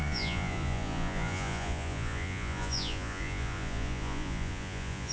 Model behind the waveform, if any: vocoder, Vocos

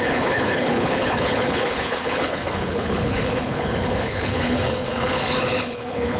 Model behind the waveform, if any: codec, HILCodec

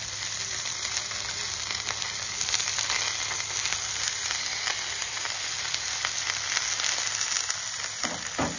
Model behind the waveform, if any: none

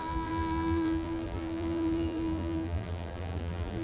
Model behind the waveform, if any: vocoder, BigVGAN v2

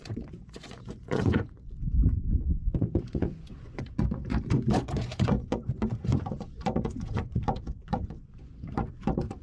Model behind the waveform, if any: vocoder, Vocos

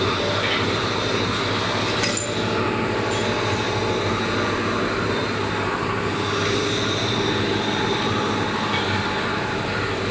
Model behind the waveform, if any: none